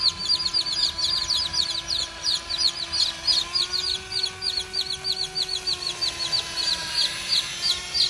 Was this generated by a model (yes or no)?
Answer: no